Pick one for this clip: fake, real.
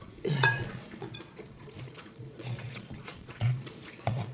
fake